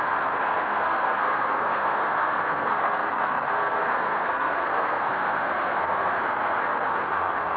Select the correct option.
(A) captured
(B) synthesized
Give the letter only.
B